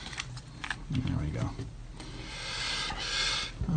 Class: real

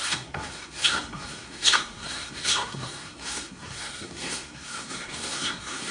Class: fake